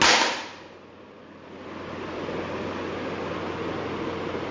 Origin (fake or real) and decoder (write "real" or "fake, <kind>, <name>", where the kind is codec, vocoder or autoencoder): real